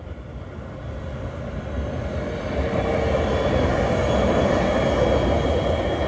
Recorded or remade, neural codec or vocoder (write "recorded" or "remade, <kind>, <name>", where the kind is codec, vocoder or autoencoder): recorded